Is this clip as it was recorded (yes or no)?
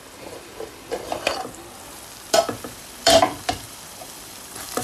no